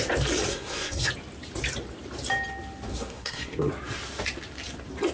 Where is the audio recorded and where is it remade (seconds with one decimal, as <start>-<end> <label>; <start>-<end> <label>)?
0.0-0.5 recorded; 0.5-1.1 remade; 1.1-2.9 recorded; 2.9-3.7 remade; 3.7-5.1 recorded